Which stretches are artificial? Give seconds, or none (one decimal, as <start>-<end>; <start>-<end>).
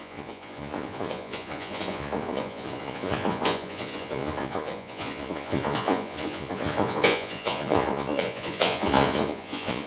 0.0-9.9